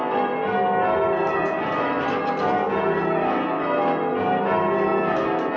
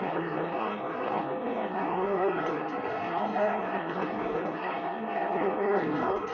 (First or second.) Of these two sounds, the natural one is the first